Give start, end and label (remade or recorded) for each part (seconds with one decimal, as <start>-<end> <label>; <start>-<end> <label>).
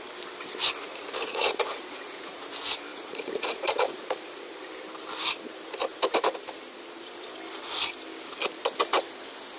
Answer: 0.0-0.9 recorded; 0.9-2.4 remade; 2.4-2.9 recorded; 2.9-4.7 remade; 4.7-9.6 recorded